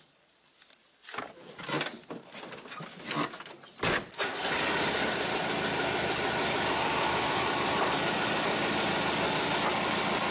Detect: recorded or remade recorded